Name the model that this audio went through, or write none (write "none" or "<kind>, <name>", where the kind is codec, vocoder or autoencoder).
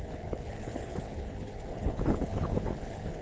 codec, HILCodec